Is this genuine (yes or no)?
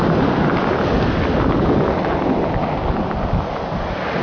yes